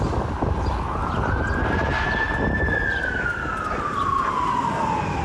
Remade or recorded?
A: recorded